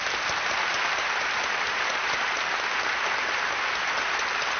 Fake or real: real